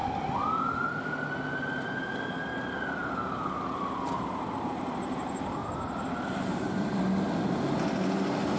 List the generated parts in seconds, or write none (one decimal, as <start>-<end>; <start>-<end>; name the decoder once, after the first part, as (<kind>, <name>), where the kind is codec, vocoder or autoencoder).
5.6-7.0 (vocoder, BigVGAN v2)

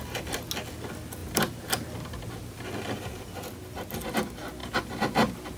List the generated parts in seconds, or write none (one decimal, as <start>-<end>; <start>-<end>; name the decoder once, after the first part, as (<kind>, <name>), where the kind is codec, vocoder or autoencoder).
none

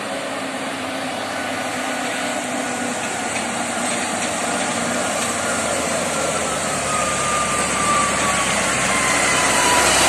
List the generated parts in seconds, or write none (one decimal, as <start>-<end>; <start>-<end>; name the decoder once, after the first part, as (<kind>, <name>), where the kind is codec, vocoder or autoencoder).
0.0-1.1 (vocoder, BigVGAN v2); 3.1-10.1

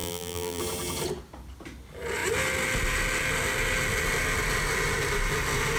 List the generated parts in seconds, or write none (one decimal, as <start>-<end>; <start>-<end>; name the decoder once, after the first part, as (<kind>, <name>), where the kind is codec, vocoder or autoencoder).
0.0-0.6 (vocoder, BigVGAN v2)